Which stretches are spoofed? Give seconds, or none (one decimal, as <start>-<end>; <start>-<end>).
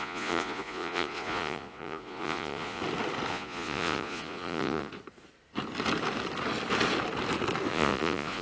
0.0-2.8; 3.3-4.9; 7.7-8.4